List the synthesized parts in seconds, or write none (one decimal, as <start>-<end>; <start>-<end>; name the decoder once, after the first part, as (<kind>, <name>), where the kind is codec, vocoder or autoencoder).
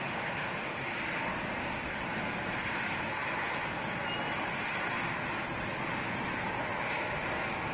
none